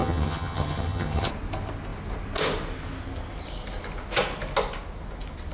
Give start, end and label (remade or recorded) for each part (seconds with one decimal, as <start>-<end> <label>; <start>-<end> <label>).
0.0-1.3 remade; 1.3-5.5 recorded